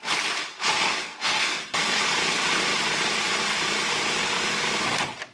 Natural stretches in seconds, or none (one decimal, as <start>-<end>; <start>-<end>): 0.0-1.0; 2.0-5.3